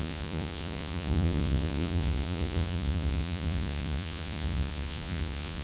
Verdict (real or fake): fake